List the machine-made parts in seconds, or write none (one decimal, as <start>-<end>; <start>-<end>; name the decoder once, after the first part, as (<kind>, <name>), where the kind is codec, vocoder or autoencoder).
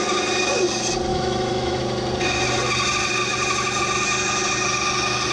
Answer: 1.1-1.8 (autoencoder, DAC-VAE)